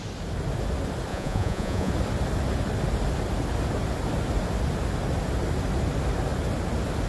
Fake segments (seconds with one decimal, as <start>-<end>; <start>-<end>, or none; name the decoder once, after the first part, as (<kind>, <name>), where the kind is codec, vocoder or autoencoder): 1.1-1.9 (vocoder, Vocos)